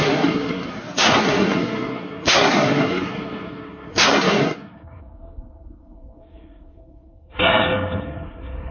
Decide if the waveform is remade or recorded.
remade